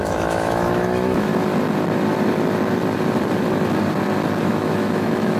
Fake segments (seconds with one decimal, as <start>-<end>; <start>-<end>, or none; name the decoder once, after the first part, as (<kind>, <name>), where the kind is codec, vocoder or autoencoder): 0.0-1.3 (autoencoder, DAC-VAE); 4.4-5.4